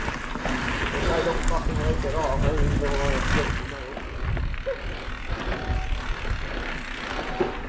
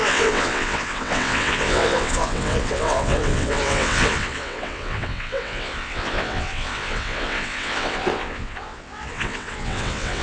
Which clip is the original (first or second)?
first